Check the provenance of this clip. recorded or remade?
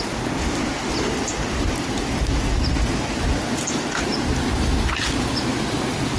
recorded